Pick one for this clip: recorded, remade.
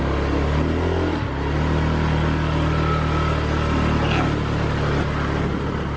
recorded